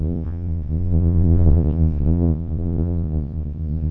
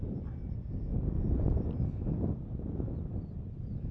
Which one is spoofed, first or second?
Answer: first